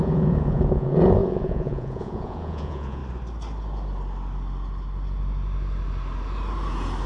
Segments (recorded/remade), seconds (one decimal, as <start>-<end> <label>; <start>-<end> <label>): 0.0-3.0 remade; 3.0-7.1 recorded